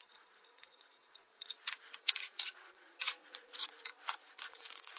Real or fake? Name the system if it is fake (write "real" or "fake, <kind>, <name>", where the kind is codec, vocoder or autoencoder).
fake, vocoder, Vocos